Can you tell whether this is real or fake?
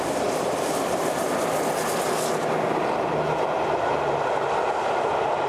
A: real